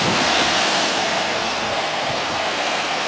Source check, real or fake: fake